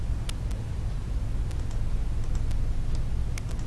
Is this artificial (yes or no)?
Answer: no